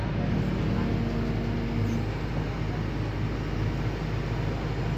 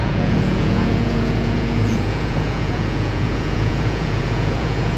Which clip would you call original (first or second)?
first